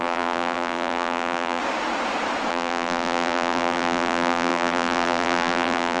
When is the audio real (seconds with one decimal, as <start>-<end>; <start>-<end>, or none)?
1.6-2.5